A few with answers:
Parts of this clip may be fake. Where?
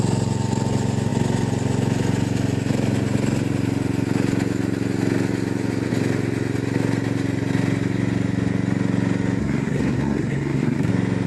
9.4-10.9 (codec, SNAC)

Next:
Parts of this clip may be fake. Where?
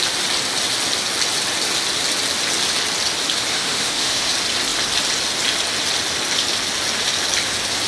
3.5-4.3 (autoencoder, DAC-VAE)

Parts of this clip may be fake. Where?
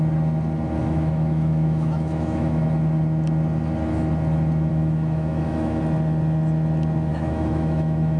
0.8-2.6 (autoencoder, DAC-VAE); 4.7-5.8; 7.1-8.2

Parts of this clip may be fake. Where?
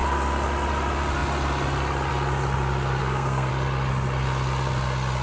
3.0-3.5 (codec, SNAC)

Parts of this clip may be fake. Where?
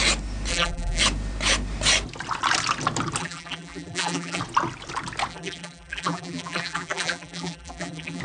0.5-1.0 (vocoder, BigVGAN v2); 3.2-4.4; 5.3-8.2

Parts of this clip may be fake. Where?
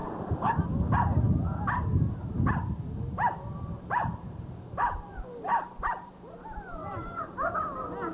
0.0-0.7 (vocoder, BigVGAN v2); 3.1-7.5